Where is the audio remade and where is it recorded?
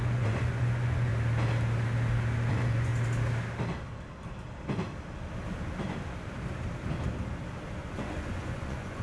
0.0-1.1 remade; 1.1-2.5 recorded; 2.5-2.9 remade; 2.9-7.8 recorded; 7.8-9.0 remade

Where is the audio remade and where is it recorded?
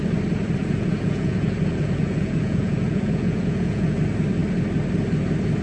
0.0-0.6 recorded; 0.6-4.0 remade; 4.0-5.6 recorded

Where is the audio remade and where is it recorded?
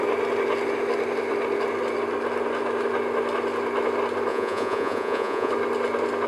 0.0-4.3 recorded; 4.3-5.5 remade; 5.5-6.3 recorded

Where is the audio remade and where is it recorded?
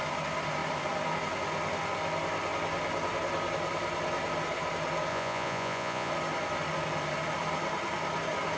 0.0-5.1 recorded; 5.1-6.1 remade; 6.1-8.6 recorded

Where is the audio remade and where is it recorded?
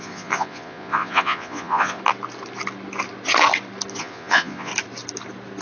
0.0-2.0 remade; 2.0-4.0 recorded; 4.0-4.7 remade; 4.7-5.6 recorded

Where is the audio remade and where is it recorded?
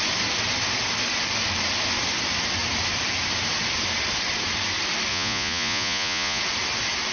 0.0-5.1 recorded; 5.1-6.4 remade; 6.4-7.1 recorded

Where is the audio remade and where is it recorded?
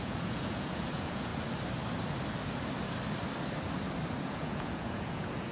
0.0-1.3 remade; 1.3-4.2 recorded; 4.2-5.5 remade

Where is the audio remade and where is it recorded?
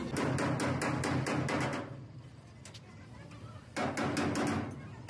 0.0-5.1 recorded